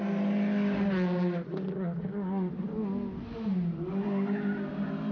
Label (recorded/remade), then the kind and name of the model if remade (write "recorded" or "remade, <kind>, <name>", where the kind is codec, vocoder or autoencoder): recorded